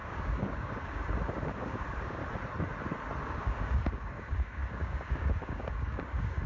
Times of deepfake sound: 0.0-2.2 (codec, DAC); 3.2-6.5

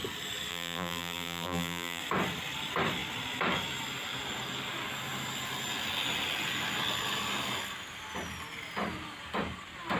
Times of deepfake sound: 0.5-2.0 (vocoder, BigVGAN v2)

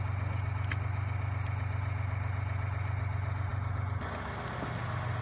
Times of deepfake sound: none

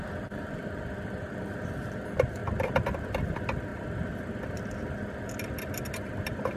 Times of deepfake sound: none

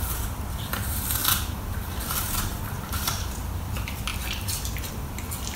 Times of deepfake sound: 1.2-2.0 (vocoder, BigVGAN v2); 2.5-3.2; 4.1-4.9